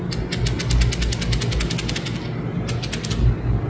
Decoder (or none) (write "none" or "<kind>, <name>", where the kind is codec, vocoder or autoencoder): none